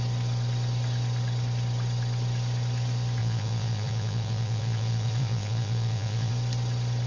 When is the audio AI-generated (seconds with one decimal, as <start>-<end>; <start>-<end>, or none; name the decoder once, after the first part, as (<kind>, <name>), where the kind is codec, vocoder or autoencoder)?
3.2-6.3 (vocoder, Vocos)